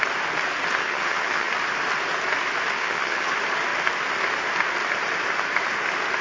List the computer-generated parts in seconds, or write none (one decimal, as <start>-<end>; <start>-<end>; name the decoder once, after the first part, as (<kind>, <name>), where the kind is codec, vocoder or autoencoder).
0.8-1.5 (vocoder, HiFi-GAN); 2.8-3.3